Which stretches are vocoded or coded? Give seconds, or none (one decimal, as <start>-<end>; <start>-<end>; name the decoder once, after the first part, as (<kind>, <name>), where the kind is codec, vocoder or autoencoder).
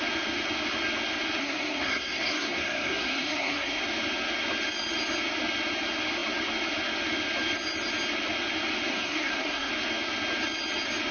1.4-3.8 (codec, SNAC); 8.9-9.7